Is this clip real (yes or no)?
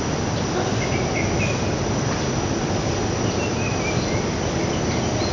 yes